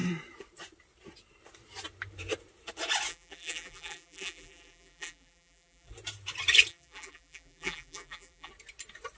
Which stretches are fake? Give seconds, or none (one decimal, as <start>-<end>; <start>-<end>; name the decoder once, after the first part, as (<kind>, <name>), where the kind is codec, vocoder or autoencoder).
3.1-5.9 (vocoder, BigVGAN v2); 6.7-8.5